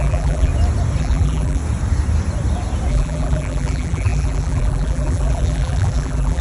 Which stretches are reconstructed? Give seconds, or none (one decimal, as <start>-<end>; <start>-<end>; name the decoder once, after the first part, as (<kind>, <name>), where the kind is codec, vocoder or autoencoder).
0.0-0.5 (vocoder, BigVGAN v2); 1.0-1.6; 2.9-6.4